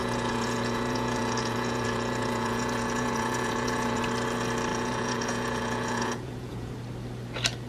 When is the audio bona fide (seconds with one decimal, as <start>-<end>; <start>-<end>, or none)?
4.0-4.7; 6.7-7.7